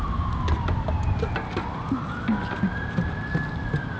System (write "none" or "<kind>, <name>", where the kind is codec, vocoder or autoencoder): none